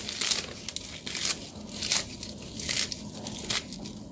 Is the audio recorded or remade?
recorded